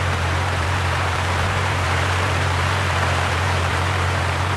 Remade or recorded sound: remade